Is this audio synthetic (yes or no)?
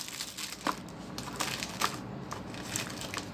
no